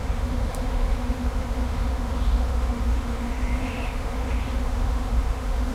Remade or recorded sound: remade